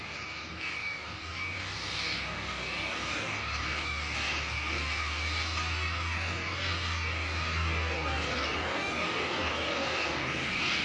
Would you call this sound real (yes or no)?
no